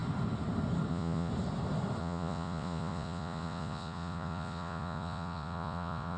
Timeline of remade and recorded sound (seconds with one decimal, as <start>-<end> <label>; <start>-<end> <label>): 0.0-0.9 recorded; 0.9-1.3 remade; 1.3-2.0 recorded; 2.0-6.2 remade